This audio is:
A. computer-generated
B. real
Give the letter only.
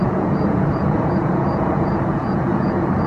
A